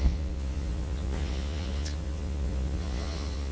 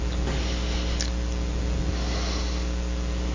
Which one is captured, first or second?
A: second